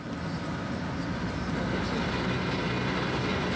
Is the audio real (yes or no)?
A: yes